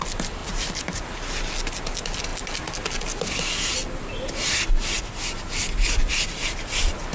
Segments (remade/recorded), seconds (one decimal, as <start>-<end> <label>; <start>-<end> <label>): 0.0-0.4 recorded; 0.4-1.0 remade; 1.0-7.1 recorded